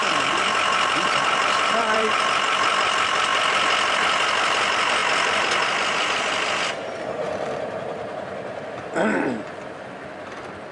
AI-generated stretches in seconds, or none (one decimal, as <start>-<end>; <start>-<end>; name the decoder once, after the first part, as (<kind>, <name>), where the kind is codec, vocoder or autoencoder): 0.0-3.3 (vocoder, BigVGAN v2); 3.9-10.7

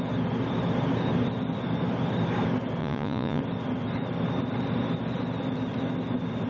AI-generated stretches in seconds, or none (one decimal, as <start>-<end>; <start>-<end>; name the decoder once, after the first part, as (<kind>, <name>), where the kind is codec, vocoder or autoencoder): 2.8-3.4 (vocoder, Vocos)

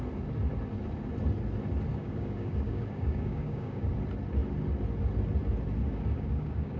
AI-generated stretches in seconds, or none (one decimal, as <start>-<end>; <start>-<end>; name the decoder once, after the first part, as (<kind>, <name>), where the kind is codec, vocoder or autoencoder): 1.9-3.9 (codec, DAC); 5.8-6.8

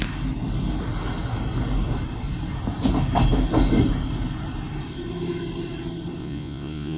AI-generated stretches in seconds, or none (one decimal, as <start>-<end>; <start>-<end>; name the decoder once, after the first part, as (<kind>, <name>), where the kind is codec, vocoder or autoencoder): 6.2-7.0 (vocoder, Vocos)